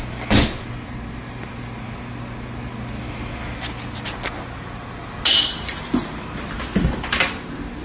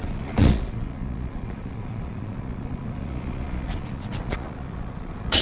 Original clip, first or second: first